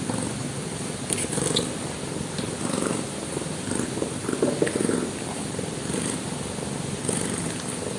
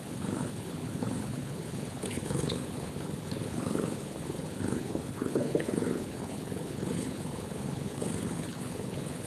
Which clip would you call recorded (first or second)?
first